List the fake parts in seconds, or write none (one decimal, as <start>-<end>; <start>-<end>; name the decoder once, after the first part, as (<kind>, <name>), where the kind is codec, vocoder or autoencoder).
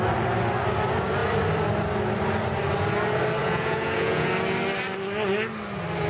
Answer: 3.4-4.3 (vocoder, Vocos)